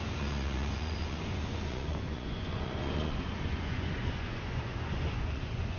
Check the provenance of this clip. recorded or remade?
remade